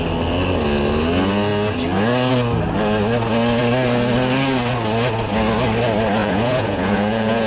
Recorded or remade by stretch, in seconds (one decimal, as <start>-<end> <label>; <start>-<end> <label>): 0.0-6.2 recorded; 6.2-7.5 remade